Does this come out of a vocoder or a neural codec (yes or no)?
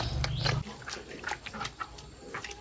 no